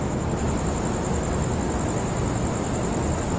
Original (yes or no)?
yes